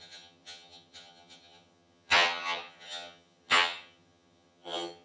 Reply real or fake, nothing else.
fake